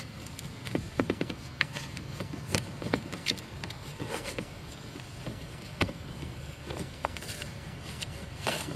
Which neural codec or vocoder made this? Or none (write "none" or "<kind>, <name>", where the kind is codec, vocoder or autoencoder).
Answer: codec, SNAC